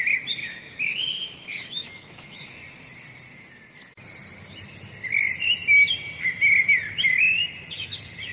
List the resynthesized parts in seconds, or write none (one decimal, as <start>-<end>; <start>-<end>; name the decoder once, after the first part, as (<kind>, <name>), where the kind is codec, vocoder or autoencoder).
0.4-2.6 (autoencoder, DAC-VAE)